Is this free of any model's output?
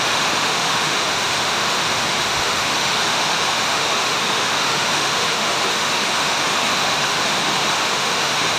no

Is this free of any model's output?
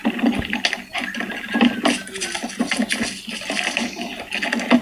yes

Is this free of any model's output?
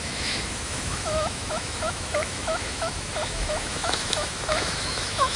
no